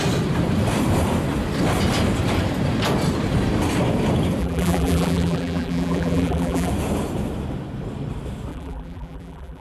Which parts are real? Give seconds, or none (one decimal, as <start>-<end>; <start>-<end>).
0.0-4.4; 6.7-8.5